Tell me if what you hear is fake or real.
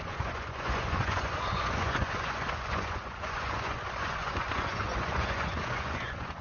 fake